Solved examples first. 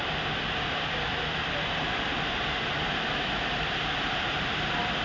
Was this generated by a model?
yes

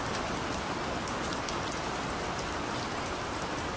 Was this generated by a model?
no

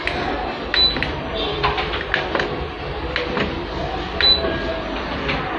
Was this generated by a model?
no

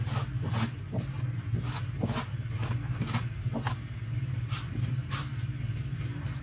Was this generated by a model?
yes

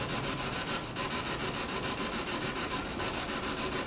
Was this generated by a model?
yes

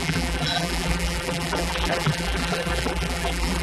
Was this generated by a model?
yes